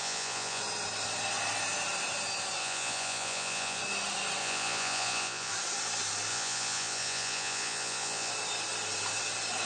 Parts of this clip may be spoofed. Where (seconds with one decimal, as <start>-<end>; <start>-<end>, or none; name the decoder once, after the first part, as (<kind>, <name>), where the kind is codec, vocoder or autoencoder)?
0.0-0.6 (vocoder, Vocos); 2.6-3.8; 4.4-5.5; 6.3-8.3